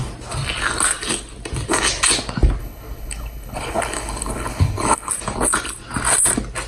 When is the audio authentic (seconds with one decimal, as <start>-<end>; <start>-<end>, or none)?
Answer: 0.0-2.6; 5.1-6.7